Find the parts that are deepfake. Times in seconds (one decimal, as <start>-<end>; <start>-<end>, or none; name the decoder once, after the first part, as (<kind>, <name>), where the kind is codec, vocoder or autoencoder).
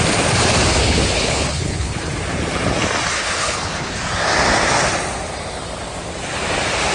0.8-2.1 (codec, HILCodec); 3.1-4.0